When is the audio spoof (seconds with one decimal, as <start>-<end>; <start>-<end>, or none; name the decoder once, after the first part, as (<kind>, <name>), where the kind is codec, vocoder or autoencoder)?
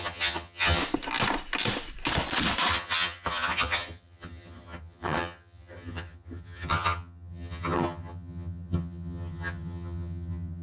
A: 0.0-0.8 (vocoder, HiFi-GAN); 2.7-10.6